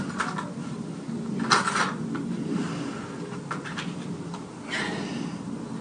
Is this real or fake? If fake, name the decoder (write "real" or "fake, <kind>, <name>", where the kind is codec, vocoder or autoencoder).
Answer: real